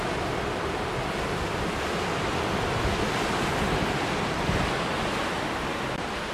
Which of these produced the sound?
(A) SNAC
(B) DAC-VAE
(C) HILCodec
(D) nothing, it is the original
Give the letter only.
D